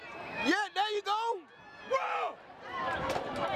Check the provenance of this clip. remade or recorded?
recorded